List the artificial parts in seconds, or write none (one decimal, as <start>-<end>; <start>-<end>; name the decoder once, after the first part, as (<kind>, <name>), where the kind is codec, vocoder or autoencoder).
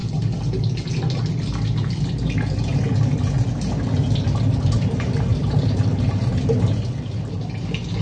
5.4-6.3 (vocoder, BigVGAN v2)